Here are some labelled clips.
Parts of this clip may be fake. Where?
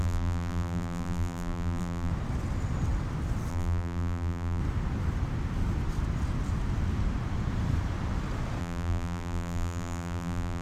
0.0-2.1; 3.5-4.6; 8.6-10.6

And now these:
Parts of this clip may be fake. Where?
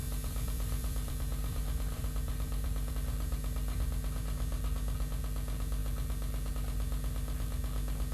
0.0-2.9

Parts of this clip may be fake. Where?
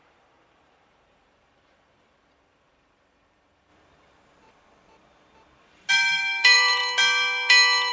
0.0-3.7; 5.9-6.8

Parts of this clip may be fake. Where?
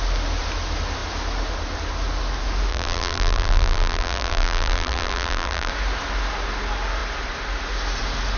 2.7-5.7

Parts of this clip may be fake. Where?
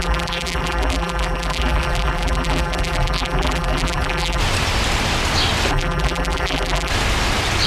0.0-4.4; 5.7-6.9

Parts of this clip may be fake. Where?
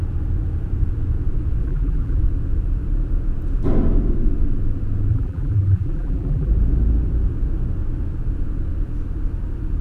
1.6-2.2; 5.1-6.5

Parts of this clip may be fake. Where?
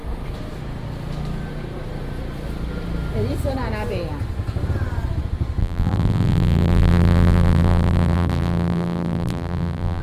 5.6-10.0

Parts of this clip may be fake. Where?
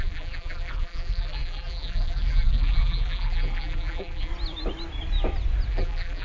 0.0-4.3; 5.7-6.2